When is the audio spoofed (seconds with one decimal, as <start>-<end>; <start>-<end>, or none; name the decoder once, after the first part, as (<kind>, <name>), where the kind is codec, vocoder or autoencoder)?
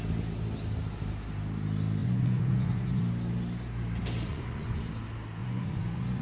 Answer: 2.0-3.0 (vocoder, Vocos); 4.3-4.8; 5.4-6.2